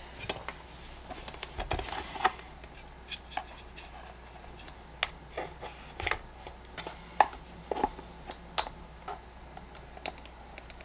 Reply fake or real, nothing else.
real